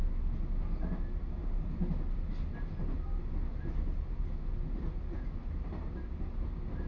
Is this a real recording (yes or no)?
yes